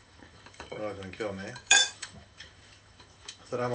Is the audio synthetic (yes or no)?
yes